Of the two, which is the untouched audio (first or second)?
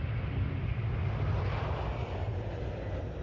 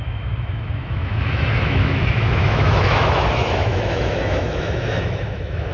first